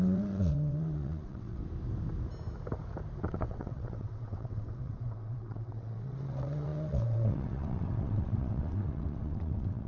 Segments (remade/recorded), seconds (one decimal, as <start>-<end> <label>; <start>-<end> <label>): 0.0-1.6 remade; 1.6-3.2 recorded; 3.2-9.9 remade